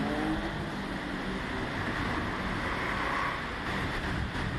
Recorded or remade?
recorded